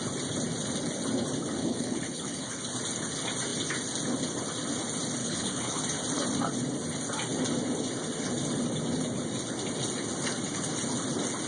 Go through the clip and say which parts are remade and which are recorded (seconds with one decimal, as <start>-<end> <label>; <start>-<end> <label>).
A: 0.0-1.6 recorded; 1.6-2.6 remade; 2.6-5.2 recorded; 5.2-5.8 remade; 5.8-11.5 recorded